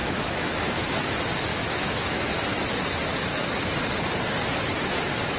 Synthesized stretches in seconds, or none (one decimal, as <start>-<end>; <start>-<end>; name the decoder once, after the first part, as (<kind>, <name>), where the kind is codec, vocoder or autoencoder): 0.0-0.8 (autoencoder, DAC-VAE); 1.5-2.3